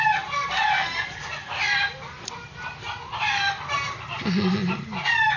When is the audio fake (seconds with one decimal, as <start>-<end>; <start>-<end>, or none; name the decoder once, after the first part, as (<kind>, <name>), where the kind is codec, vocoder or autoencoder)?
0.0-0.4 (vocoder, BigVGAN v2); 1.2-5.4